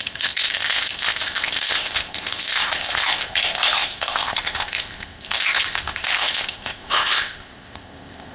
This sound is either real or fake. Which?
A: fake